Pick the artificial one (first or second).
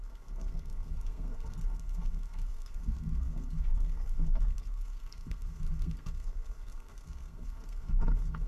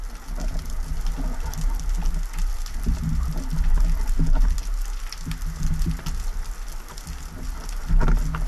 first